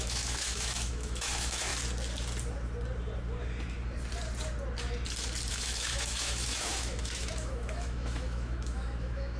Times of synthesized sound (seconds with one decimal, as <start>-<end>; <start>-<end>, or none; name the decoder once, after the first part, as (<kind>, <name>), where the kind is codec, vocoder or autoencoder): 0.0-1.7 (autoencoder, DAC-VAE); 5.5-9.4